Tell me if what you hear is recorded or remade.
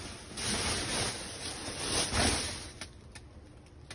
recorded